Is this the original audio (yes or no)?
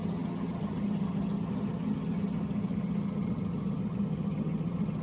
no